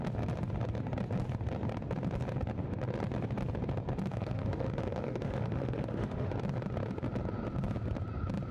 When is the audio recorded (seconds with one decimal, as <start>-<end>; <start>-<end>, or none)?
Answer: 0.0-4.1; 6.3-8.5